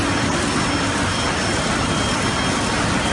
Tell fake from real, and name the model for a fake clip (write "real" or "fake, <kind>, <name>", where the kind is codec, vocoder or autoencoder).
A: real